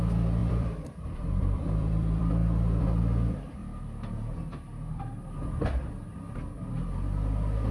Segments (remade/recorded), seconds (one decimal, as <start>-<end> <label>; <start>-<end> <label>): 0.0-2.4 remade; 2.4-3.0 recorded; 3.0-3.6 remade; 3.6-7.7 recorded